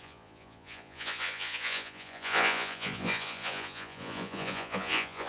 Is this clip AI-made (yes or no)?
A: yes